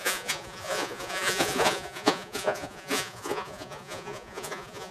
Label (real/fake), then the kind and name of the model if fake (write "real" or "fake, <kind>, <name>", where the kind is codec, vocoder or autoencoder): fake, vocoder, Vocos